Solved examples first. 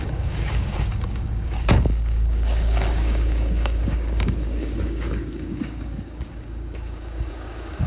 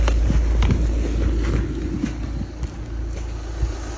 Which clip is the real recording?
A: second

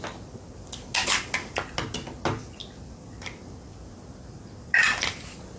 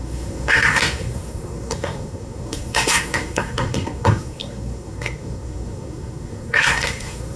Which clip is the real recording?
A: first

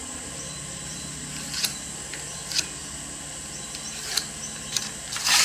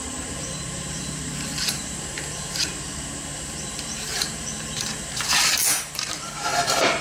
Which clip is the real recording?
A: first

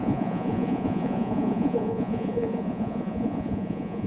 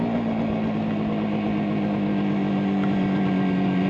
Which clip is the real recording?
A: second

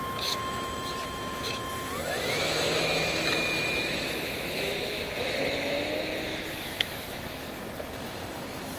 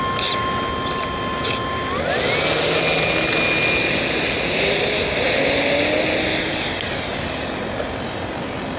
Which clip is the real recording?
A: second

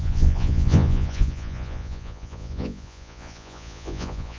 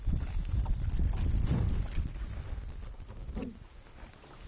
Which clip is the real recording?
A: second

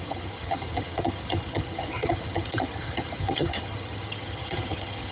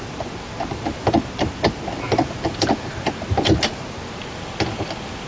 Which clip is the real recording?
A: second